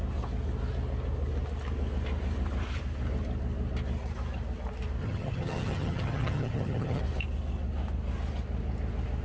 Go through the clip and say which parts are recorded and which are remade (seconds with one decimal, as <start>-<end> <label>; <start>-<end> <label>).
0.0-5.0 recorded; 5.0-7.0 remade; 7.0-9.2 recorded